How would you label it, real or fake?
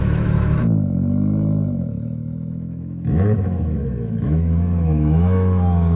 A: fake